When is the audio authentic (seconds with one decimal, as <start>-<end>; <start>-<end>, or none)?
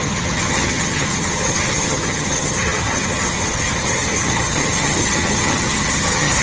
none